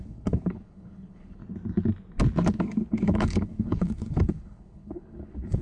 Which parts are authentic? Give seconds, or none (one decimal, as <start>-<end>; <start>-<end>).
1.4-2.9